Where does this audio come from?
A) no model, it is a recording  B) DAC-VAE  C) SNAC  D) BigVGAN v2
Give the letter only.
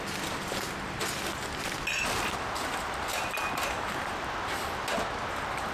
A